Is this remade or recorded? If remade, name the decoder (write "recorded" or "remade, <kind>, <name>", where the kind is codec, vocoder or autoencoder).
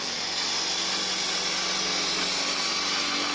recorded